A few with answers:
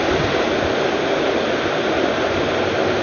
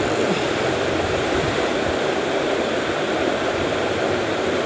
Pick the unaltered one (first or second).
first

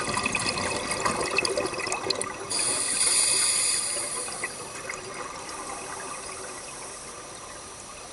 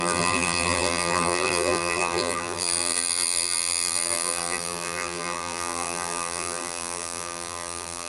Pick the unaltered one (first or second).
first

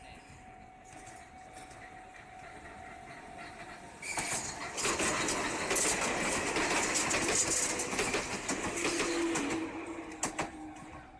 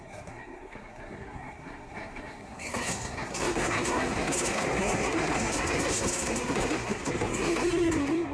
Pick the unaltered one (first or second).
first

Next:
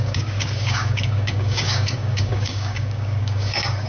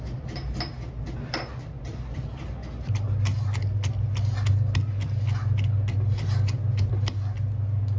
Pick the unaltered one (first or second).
second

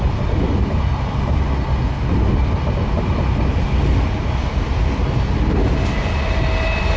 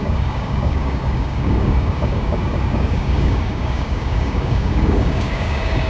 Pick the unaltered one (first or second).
first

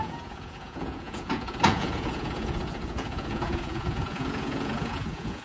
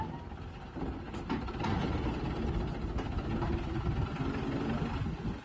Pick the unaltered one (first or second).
second